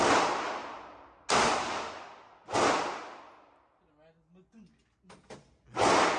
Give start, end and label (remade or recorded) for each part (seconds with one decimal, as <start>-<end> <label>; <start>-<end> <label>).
0.0-6.2 recorded